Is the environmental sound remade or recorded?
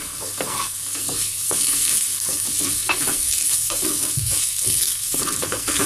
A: remade